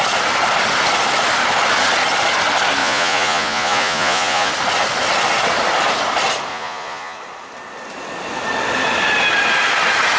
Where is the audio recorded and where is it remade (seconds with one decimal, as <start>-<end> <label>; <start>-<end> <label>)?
0.0-2.8 recorded; 2.8-4.5 remade; 4.5-6.5 recorded; 6.5-7.2 remade; 7.2-10.2 recorded